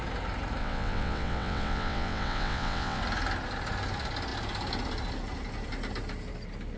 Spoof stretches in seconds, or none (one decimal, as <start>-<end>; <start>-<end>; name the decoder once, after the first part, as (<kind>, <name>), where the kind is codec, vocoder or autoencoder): 0.6-3.0 (vocoder, WaveNeXt)